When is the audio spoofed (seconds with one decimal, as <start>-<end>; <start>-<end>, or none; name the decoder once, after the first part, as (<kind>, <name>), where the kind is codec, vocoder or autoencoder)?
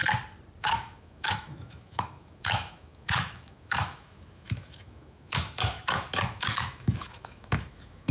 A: 0.6-8.1 (autoencoder, DAC-VAE)